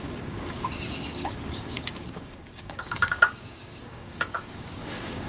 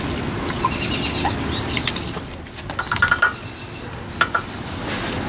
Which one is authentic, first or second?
second